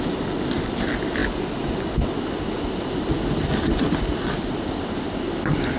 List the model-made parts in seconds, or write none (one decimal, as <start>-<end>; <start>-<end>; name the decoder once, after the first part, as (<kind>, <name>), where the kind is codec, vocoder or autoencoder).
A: none